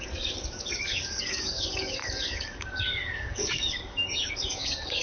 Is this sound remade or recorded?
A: remade